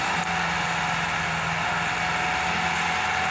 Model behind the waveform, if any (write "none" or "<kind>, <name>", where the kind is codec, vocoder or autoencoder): none